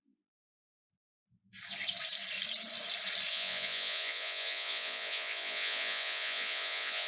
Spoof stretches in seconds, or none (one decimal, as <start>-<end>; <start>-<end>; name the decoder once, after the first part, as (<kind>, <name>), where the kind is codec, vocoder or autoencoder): 0.0-1.4 (vocoder, Vocos); 3.3-7.1